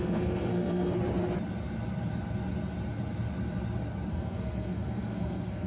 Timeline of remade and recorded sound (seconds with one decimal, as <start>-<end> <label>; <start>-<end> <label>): 0.0-1.0 remade; 1.0-4.1 recorded; 4.1-5.7 remade